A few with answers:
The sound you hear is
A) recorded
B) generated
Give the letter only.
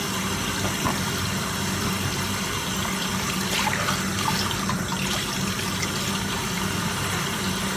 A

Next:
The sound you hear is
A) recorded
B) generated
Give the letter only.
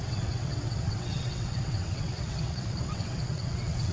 B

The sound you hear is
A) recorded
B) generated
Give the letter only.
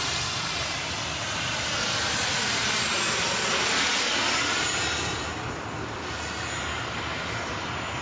A